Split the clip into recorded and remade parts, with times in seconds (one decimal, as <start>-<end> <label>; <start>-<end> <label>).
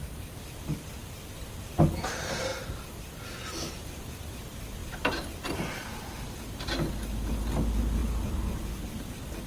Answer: 0.0-2.5 remade; 2.5-3.7 recorded; 3.7-8.0 remade; 8.0-8.6 recorded; 8.6-9.5 remade